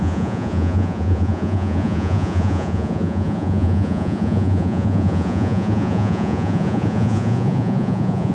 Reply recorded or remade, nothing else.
remade